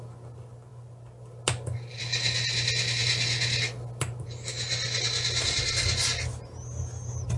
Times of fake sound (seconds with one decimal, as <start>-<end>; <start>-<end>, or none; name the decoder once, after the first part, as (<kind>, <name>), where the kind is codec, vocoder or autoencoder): none